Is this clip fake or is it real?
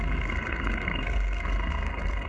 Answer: fake